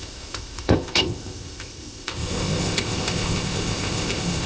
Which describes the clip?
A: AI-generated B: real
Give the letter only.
A